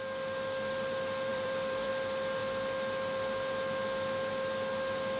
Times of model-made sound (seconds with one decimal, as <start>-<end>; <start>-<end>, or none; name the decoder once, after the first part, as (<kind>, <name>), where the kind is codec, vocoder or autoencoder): 1.3-1.9 (vocoder, BigVGAN v2)